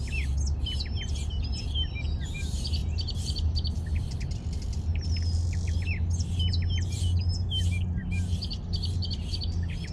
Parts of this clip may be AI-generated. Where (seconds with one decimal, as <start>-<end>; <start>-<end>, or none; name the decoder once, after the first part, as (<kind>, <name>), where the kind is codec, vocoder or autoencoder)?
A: 2.8-3.5 (vocoder, BigVGAN v2)